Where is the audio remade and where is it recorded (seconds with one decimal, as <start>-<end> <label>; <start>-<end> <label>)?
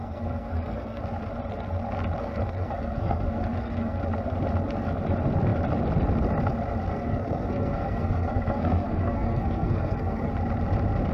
0.0-1.0 remade; 1.0-2.2 recorded; 2.2-4.0 remade; 4.0-6.9 recorded; 6.9-10.3 remade; 10.3-11.1 recorded